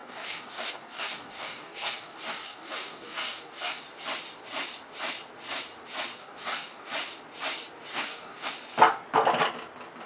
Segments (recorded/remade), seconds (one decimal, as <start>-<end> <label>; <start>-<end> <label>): 0.0-3.8 remade; 3.8-6.2 recorded; 6.2-6.9 remade; 6.9-7.9 recorded; 7.9-8.5 remade; 8.5-10.1 recorded